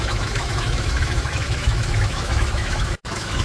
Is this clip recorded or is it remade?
remade